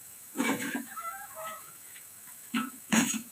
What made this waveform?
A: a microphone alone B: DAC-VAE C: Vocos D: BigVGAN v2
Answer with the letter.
B